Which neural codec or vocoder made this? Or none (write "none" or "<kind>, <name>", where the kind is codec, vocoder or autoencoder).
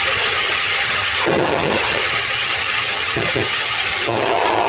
vocoder, HiFi-GAN